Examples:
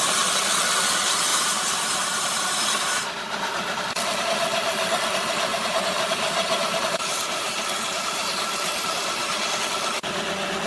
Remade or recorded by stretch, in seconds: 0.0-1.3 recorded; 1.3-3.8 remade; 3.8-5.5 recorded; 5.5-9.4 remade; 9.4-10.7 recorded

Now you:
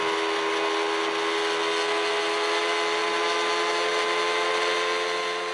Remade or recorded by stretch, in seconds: 0.0-5.5 recorded